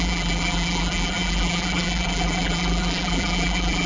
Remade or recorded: remade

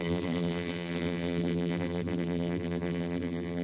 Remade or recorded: remade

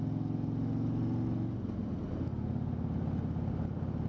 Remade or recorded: recorded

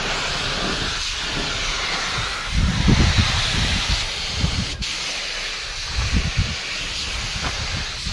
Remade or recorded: remade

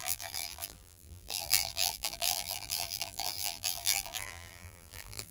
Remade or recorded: remade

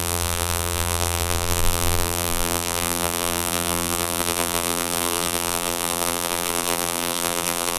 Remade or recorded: remade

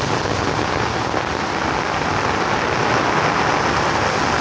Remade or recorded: recorded